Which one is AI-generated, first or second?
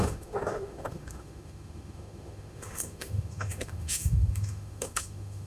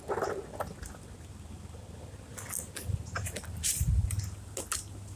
first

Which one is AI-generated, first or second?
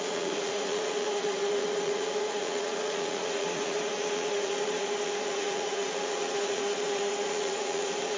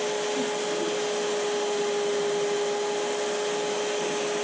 first